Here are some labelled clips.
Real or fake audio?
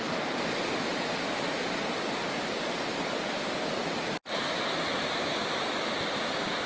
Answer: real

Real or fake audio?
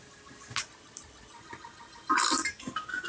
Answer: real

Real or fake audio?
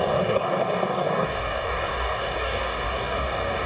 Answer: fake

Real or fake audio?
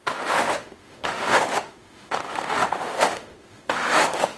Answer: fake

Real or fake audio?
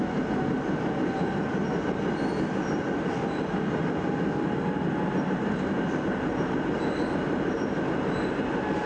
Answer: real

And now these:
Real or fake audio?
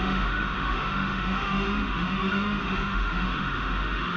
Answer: fake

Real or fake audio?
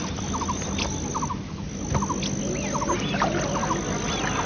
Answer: real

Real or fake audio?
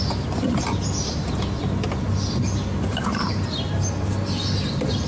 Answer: real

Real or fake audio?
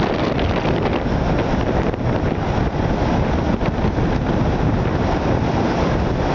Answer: real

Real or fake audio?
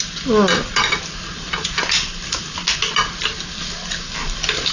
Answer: real